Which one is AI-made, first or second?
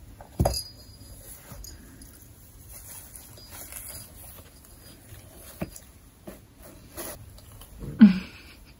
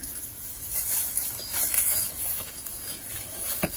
second